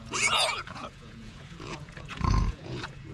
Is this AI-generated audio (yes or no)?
yes